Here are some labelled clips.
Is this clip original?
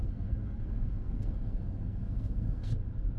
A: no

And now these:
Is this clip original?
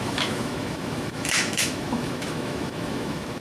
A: no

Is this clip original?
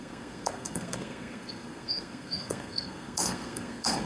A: no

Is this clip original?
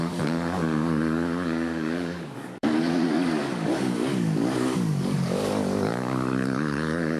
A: no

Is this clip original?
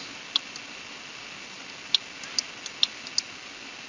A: yes